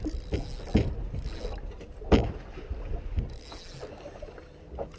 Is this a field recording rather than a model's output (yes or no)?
yes